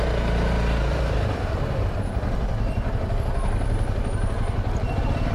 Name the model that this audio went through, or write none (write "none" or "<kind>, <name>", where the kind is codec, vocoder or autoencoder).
vocoder, BigVGAN v2